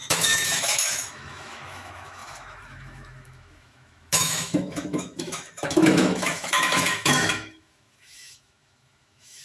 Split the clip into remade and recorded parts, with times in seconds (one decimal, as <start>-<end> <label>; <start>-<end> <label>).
0.0-9.4 remade